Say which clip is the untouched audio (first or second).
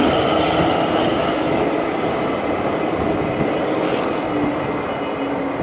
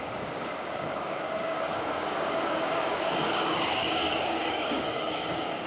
first